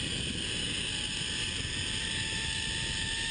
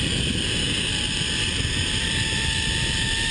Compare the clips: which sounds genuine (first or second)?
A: first